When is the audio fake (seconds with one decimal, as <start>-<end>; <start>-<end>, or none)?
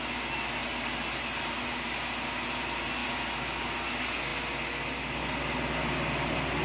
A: none